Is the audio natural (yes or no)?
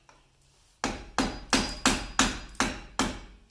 yes